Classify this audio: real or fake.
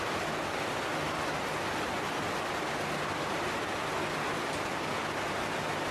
real